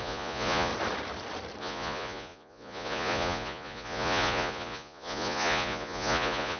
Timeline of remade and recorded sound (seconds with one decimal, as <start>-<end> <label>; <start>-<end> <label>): 0.0-0.7 remade; 0.7-1.6 recorded; 1.6-6.6 remade